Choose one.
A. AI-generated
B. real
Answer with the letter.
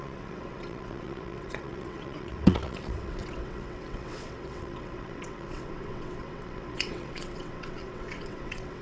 A